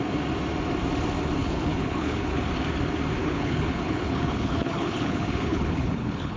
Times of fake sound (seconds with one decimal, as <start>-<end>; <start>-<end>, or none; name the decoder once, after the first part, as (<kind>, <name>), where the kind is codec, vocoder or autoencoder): 1.4-2.4 (codec, HILCodec); 3.2-6.4